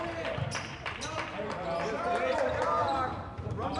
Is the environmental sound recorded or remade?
recorded